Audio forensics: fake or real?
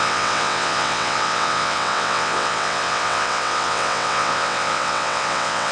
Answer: fake